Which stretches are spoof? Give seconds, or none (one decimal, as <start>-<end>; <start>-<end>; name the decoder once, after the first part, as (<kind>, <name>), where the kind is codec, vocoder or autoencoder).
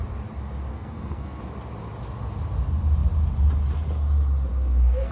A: 0.7-1.4 (codec, SNAC); 4.5-5.1